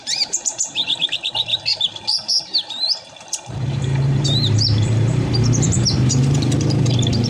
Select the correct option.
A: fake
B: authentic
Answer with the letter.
A